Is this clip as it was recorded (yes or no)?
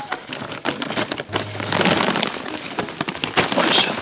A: yes